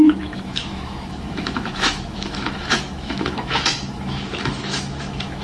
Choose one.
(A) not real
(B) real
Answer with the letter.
A